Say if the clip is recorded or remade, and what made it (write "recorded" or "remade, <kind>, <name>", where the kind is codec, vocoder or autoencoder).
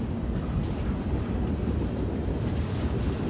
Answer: recorded